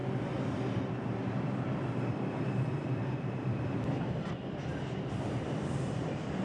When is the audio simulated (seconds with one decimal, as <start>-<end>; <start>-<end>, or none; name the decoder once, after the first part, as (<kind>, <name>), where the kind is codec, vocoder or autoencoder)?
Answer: 0.9-6.4 (vocoder, BigVGAN v2)

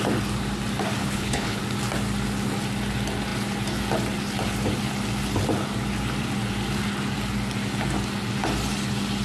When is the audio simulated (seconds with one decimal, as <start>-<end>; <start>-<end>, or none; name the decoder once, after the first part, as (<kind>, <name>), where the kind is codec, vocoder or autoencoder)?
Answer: 1.0-1.6 (codec, HILCodec)

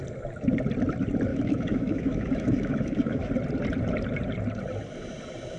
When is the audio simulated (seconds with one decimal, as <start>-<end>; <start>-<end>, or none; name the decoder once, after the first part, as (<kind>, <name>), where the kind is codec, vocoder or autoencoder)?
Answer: 1.3-3.3 (autoencoder, DAC-VAE)

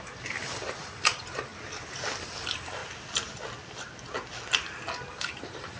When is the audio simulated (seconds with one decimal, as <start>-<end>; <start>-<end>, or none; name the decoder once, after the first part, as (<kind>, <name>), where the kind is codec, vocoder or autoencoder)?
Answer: 0.0-1.5 (vocoder, BigVGAN v2); 2.2-2.8; 5.1-5.8